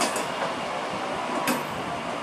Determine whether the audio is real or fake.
real